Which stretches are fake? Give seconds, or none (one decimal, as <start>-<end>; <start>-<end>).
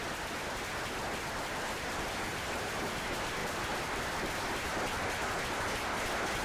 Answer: 0.0-6.4